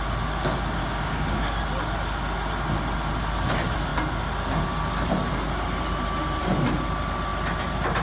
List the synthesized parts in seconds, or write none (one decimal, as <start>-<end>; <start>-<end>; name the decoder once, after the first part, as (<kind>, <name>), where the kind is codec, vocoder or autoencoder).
0.8-1.6 (codec, DAC)